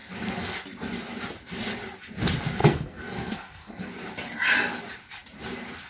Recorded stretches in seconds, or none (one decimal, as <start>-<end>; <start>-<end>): 0.0-2.6; 3.9-5.9